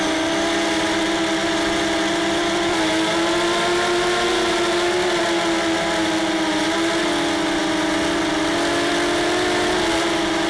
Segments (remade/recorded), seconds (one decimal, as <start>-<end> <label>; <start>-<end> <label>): 0.0-10.5 recorded